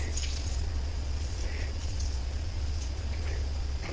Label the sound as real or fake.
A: fake